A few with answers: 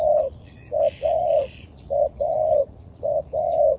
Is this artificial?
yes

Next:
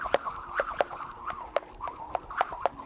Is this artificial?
no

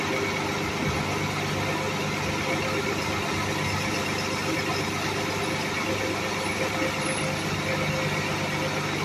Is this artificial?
no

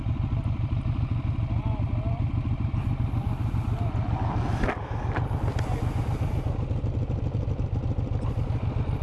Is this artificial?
no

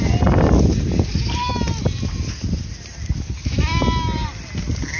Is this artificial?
no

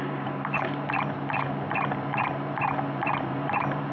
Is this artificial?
yes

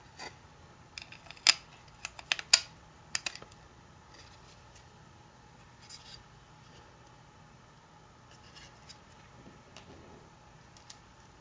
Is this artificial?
no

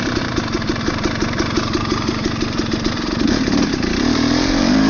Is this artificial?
yes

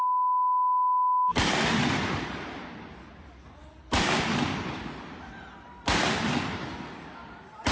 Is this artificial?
no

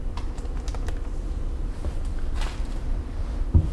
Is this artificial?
no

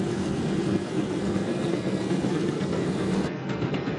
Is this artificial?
yes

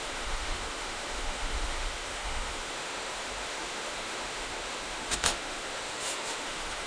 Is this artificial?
yes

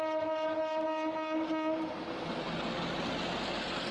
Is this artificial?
no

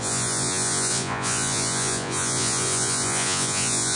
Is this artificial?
yes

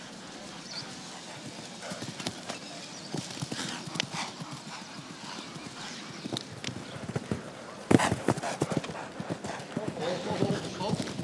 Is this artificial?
no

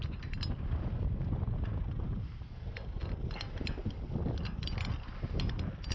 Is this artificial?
no